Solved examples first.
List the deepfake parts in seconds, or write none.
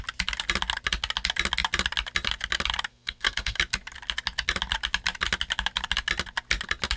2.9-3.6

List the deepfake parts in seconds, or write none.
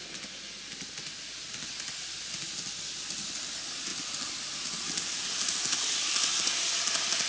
none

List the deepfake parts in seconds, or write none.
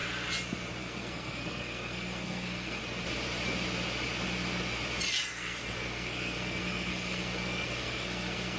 0.8-2.8; 5.3-8.6